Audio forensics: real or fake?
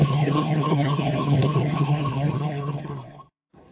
fake